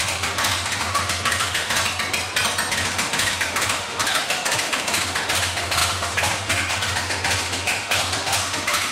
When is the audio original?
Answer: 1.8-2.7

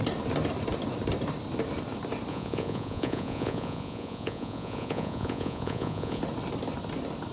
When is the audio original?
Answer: 0.0-2.3; 6.2-7.3

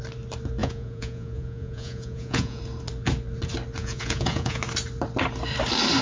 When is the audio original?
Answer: 0.0-0.6; 2.6-3.8; 4.6-6.0

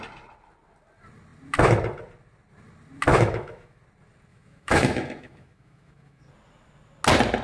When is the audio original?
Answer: 0.0-3.1; 3.8-4.3; 6.2-7.4

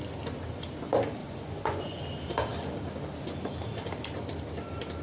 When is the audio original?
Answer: 0.0-1.2; 2.0-5.0

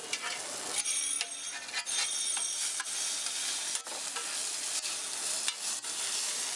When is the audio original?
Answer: 0.0-6.6